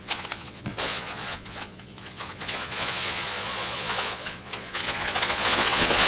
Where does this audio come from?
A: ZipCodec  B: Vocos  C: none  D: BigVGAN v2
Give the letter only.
B